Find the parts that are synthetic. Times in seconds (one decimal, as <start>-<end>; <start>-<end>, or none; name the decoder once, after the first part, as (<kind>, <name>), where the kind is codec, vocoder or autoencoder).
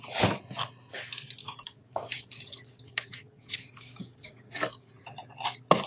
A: 1.4-4.9 (codec, DAC)